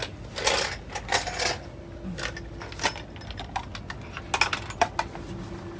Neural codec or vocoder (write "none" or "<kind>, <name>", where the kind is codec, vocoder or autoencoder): none